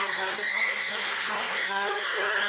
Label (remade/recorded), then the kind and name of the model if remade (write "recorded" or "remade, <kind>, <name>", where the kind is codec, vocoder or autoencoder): remade, codec, SNAC